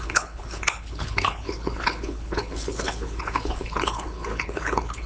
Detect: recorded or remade remade